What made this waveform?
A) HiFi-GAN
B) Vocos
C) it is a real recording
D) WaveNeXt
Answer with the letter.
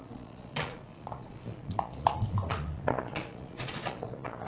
B